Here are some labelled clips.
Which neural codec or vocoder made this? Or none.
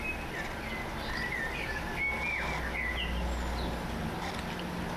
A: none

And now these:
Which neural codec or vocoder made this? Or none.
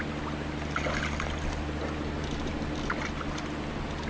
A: none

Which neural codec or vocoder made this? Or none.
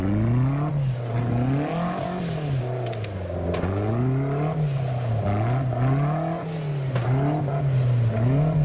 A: none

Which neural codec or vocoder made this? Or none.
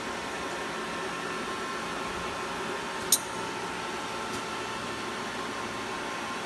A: none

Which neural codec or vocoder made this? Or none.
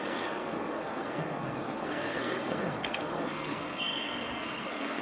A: codec, SNAC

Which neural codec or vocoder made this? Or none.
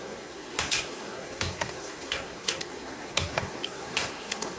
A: codec, SNAC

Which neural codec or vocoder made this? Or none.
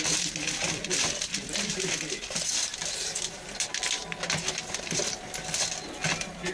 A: none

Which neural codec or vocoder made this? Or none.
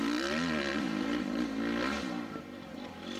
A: none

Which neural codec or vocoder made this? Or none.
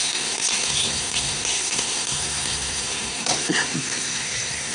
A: codec, SNAC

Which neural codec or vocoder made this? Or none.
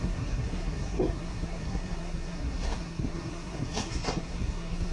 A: codec, SNAC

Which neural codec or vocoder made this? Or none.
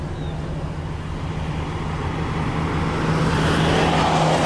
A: none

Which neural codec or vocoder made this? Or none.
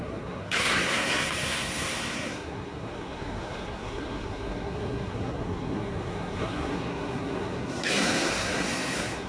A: codec, SNAC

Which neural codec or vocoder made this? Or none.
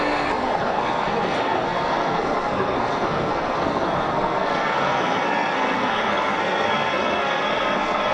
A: codec, SNAC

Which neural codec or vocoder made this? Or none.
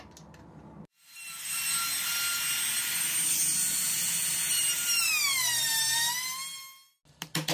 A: none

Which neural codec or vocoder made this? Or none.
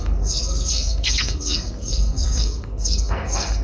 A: codec, SNAC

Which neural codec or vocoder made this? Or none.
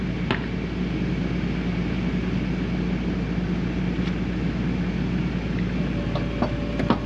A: none